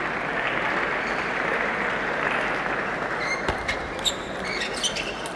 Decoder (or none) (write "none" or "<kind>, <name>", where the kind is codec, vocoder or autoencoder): none